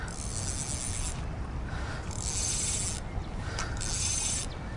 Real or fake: real